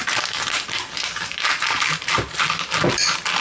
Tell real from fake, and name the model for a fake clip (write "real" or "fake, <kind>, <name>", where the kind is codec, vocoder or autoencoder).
real